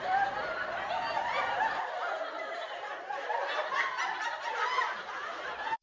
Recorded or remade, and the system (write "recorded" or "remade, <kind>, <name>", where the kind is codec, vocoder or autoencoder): remade, vocoder, BigVGAN v2